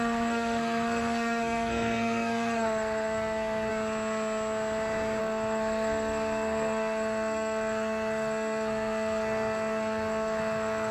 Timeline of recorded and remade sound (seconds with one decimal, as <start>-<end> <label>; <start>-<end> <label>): 0.0-3.7 remade; 3.7-5.2 recorded; 5.2-10.9 remade